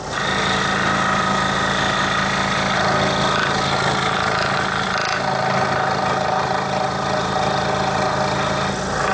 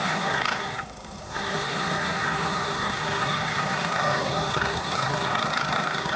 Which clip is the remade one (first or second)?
second